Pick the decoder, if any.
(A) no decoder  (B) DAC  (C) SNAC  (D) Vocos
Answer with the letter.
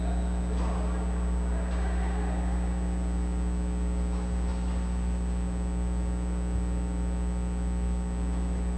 A